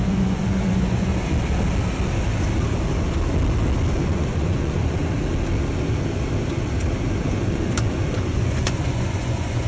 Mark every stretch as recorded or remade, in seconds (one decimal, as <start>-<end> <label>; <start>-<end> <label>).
0.0-1.1 remade; 1.1-4.0 recorded; 4.0-5.0 remade; 5.0-7.2 recorded; 7.2-9.7 remade